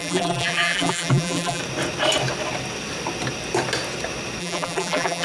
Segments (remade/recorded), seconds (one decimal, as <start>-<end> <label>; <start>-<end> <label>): 0.0-1.6 remade; 1.6-4.4 recorded; 4.4-5.2 remade